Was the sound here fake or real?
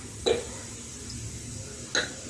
real